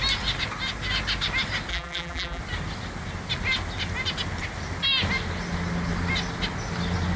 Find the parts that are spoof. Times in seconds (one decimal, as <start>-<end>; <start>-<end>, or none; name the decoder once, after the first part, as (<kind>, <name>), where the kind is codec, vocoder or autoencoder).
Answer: 1.7-2.4 (vocoder, BigVGAN v2)